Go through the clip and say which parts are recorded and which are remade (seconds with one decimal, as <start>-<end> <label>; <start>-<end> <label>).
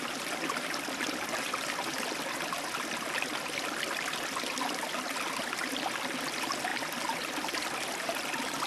0.0-8.7 recorded